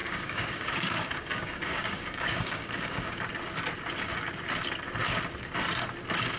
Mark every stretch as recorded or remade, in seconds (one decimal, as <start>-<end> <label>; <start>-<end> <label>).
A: 0.0-3.2 remade; 3.2-6.4 recorded